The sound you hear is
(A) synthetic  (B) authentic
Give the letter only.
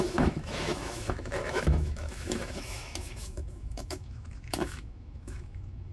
A